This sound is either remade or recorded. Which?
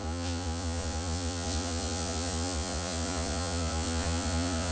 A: remade